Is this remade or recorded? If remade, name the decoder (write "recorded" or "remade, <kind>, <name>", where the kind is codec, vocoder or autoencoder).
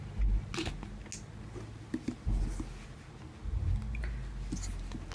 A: recorded